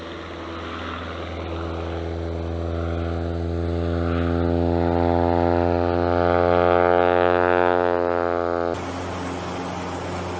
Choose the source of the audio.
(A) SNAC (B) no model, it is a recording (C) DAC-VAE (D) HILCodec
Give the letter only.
B